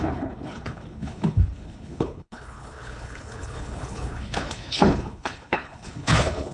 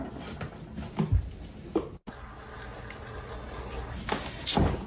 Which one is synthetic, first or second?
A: first